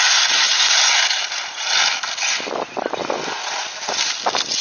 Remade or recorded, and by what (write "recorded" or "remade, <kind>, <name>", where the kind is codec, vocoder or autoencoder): recorded